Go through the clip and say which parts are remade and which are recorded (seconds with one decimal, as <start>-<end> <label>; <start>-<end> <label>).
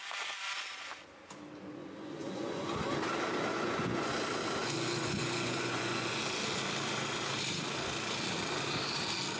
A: 0.0-1.8 recorded; 1.8-2.7 remade; 2.7-3.5 recorded; 3.5-4.1 remade; 4.1-4.6 recorded; 4.6-6.2 remade; 6.2-9.4 recorded